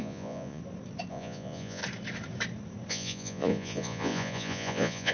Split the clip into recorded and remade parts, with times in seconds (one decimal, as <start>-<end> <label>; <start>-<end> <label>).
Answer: 0.0-0.6 remade; 0.6-1.1 recorded; 1.1-1.8 remade; 1.8-2.9 recorded; 2.9-5.1 remade

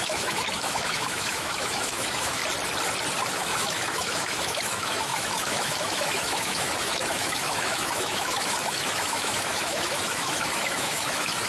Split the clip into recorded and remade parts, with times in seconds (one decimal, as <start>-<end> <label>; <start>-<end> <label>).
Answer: 0.0-2.4 remade; 2.4-3.3 recorded; 3.3-11.5 remade

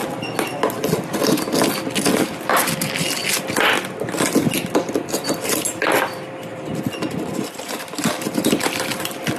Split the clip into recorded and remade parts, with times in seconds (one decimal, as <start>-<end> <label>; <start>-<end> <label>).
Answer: 0.0-2.5 recorded; 2.5-3.2 remade; 3.2-4.6 recorded; 4.6-9.4 remade

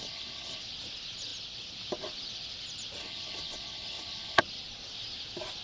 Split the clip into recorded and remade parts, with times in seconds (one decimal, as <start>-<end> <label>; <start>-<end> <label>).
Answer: 0.0-0.6 remade; 0.6-3.0 recorded; 3.0-4.4 remade; 4.4-5.6 recorded

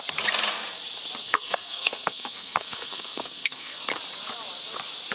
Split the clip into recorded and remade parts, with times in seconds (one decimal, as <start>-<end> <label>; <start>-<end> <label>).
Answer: 0.0-1.2 recorded; 1.2-3.8 remade; 3.8-5.1 recorded

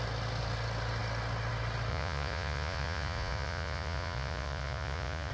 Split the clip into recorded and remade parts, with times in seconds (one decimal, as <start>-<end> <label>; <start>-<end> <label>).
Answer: 0.0-1.9 recorded; 1.9-5.3 remade

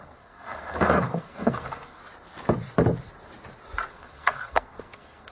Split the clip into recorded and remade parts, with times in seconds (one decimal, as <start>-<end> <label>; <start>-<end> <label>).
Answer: 0.0-2.0 remade; 2.0-3.9 recorded; 3.9-5.3 remade

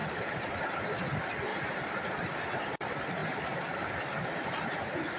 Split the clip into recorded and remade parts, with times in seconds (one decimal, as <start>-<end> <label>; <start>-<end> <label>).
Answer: 0.0-0.6 remade; 0.6-1.5 recorded; 1.5-2.1 remade; 2.1-5.2 recorded